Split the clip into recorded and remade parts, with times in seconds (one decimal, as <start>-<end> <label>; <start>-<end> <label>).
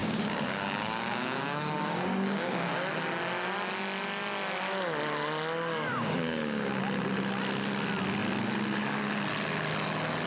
0.0-2.7 remade; 2.7-5.9 recorded; 5.9-6.8 remade; 6.8-10.3 recorded